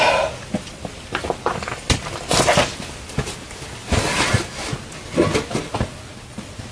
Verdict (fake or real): real